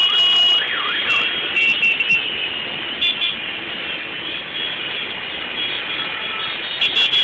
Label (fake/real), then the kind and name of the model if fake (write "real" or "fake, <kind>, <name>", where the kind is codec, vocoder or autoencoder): real